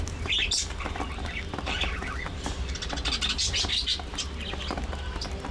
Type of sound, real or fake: real